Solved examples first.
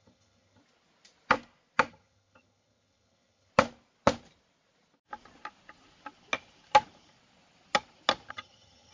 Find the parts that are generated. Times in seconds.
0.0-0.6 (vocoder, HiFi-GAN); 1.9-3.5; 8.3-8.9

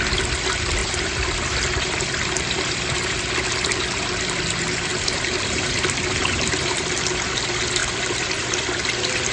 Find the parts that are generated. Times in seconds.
0.8-3.2 (vocoder, BigVGAN v2); 4.9-6.8; 7.8-8.5

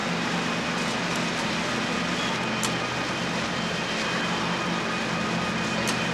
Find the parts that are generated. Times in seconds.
none

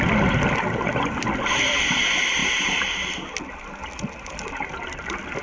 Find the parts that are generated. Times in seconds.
none

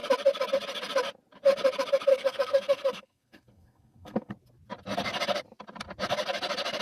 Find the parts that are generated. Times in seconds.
2.1-4.3 (codec, SNAC)